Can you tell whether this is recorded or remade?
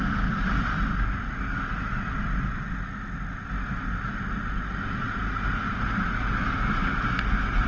recorded